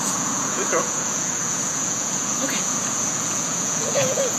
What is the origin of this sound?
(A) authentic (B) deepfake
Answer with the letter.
B